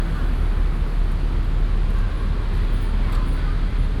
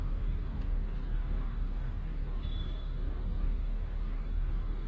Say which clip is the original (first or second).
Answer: first